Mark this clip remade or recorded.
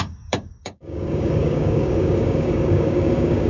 remade